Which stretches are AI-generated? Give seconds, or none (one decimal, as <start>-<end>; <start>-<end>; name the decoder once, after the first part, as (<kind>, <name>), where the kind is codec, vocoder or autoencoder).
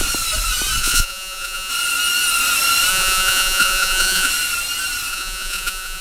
0.8-1.7 (vocoder, Vocos); 2.9-4.3; 5.1-6.0